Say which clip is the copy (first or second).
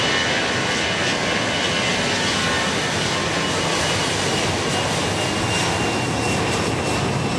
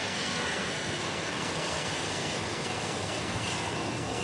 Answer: second